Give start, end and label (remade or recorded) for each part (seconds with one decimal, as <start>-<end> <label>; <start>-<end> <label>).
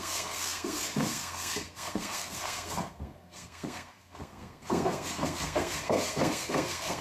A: 0.0-7.0 remade